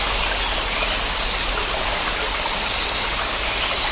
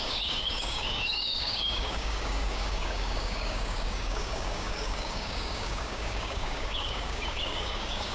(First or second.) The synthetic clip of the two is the second